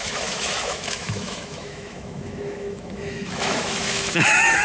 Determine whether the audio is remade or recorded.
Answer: remade